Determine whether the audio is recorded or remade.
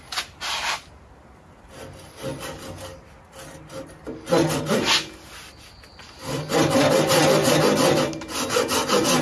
recorded